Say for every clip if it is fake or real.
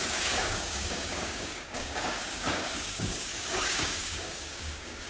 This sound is fake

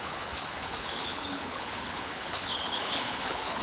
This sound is fake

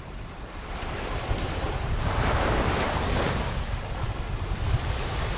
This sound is fake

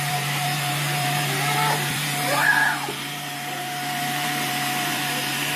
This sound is fake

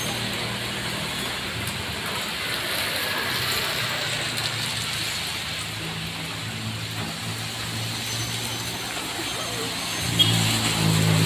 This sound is real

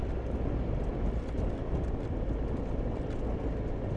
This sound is real